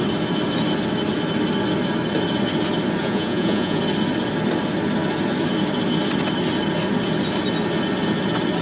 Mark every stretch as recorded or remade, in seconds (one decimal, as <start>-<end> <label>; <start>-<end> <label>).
0.0-3.0 recorded; 3.0-3.8 remade; 3.8-8.6 recorded